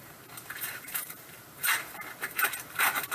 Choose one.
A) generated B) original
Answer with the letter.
A